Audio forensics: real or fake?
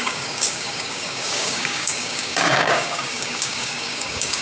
fake